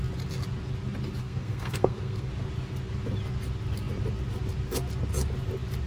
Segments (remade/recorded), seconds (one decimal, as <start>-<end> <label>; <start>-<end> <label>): 0.0-1.2 recorded; 1.2-2.3 remade; 2.3-5.9 recorded